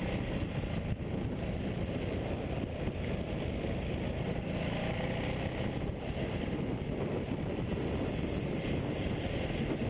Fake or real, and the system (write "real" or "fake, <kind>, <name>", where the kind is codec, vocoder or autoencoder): real